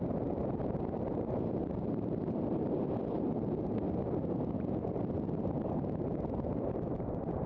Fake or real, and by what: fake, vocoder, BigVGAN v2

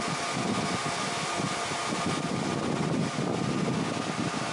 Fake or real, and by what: real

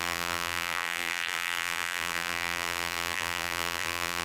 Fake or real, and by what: fake, vocoder, BigVGAN v2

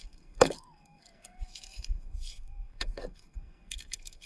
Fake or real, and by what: fake, codec, SNAC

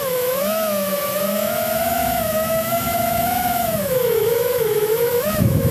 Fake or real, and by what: fake, autoencoder, DAC-VAE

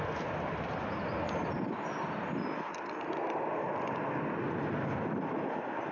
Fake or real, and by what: real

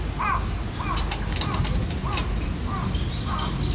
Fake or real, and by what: real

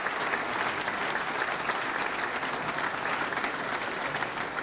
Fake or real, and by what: real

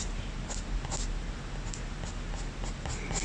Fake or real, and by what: real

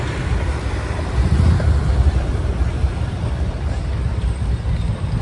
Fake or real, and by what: fake, vocoder, BigVGAN v2